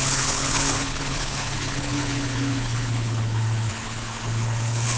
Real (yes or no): no